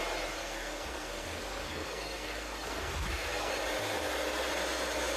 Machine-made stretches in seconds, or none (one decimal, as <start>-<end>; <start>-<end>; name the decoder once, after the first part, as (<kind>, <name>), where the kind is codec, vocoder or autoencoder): 0.4-3.5 (codec, SNAC)